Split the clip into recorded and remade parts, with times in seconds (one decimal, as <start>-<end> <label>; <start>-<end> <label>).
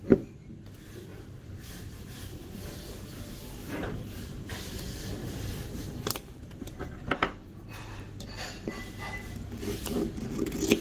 0.0-1.1 recorded; 1.1-2.8 remade; 2.8-3.6 recorded; 3.6-4.5 remade; 4.5-5.2 recorded; 5.2-6.5 remade; 6.5-7.4 recorded; 7.4-8.0 remade; 8.0-10.8 recorded